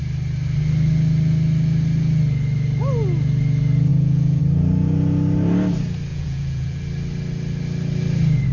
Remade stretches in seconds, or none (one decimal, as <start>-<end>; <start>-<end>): 3.9-4.4; 6.1-6.8